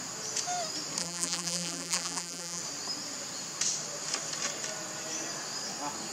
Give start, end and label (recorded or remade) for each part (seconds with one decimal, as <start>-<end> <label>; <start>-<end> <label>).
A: 0.0-1.0 recorded; 1.0-2.6 remade; 2.6-6.1 recorded